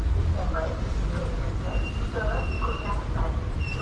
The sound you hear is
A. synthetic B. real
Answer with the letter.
B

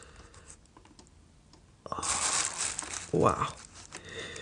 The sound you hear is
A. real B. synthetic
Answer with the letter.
A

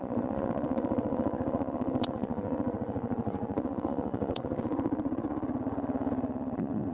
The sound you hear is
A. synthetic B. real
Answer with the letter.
A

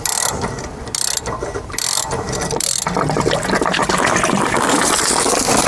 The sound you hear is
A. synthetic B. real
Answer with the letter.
B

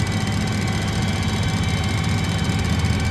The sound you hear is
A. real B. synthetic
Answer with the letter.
A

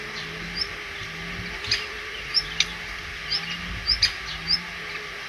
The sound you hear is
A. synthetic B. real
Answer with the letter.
B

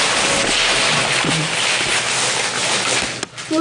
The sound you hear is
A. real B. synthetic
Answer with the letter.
A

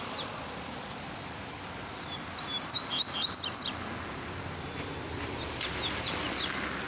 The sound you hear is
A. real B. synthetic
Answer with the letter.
A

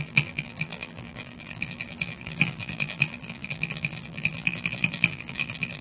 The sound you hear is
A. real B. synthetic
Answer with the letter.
B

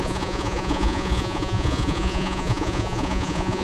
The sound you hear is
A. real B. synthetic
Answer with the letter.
B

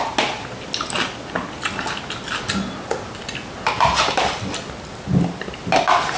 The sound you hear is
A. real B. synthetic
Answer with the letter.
A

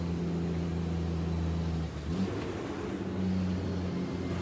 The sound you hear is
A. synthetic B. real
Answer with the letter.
B